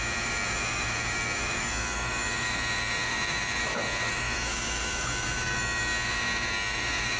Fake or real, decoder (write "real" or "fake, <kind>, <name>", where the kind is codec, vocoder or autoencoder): fake, autoencoder, DAC-VAE